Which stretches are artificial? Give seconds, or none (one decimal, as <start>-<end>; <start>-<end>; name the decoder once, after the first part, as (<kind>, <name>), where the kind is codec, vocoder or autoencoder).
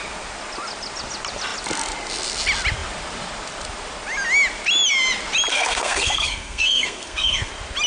5.5-7.5 (codec, SNAC)